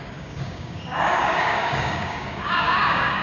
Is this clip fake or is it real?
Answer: fake